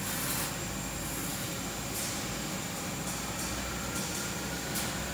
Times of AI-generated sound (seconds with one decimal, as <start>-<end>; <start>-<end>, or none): none